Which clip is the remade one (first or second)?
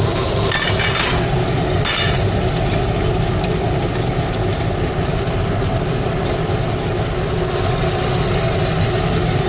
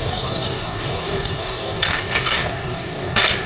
second